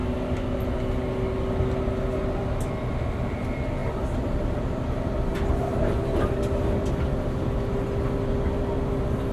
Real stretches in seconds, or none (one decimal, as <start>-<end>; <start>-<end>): 0.0-3.8; 4.4-9.3

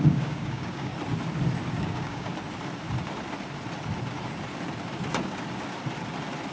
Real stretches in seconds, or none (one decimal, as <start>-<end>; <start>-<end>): 0.9-1.8; 2.3-6.5

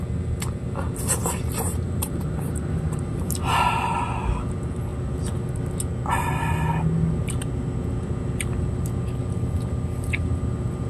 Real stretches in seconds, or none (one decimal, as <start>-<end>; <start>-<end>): 0.0-1.2; 3.3-10.9

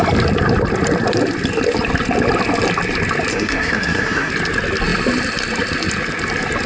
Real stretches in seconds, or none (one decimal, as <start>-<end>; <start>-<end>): 0.0-3.3; 4.3-6.7

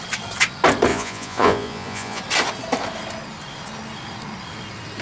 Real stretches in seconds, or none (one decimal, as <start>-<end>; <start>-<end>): 0.0-0.9; 2.2-5.0

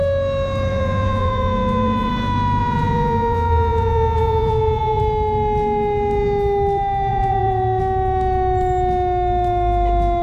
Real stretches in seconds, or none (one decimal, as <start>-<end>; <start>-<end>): 0.0-0.7; 2.1-2.6; 5.0-7.1; 7.8-10.2

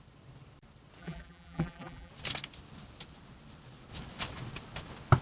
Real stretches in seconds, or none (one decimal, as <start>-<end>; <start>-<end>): 0.0-1.0; 2.1-5.2

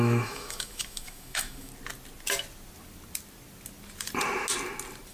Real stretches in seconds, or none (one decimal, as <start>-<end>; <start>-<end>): 1.7-5.1